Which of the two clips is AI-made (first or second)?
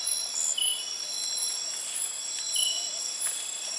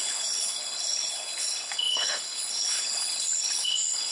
second